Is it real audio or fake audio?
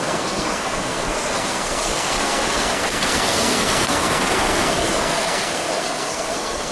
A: fake